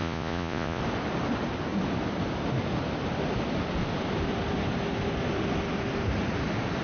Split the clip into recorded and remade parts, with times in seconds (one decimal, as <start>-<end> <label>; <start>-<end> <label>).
0.0-0.8 remade; 0.8-6.8 recorded